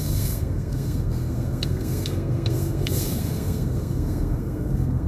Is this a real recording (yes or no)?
no